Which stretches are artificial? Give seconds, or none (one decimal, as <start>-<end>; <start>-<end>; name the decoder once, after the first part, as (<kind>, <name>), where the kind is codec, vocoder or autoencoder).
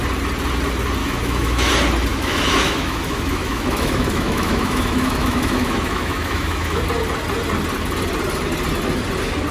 1.0-1.7 (autoencoder, DAC-VAE); 2.1-6.8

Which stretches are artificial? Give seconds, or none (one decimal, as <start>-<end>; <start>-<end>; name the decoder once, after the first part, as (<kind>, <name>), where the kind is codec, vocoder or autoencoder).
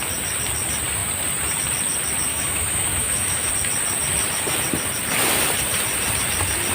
2.3-3.5 (autoencoder, DAC-VAE)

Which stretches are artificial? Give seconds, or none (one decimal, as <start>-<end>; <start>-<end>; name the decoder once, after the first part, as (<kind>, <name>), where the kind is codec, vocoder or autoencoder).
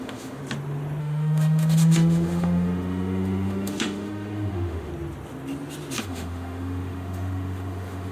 0.0-0.4 (autoencoder, DAC-VAE); 1.0-4.9; 6.0-8.1